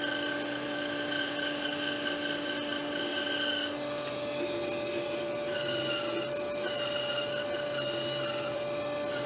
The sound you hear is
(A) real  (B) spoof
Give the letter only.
A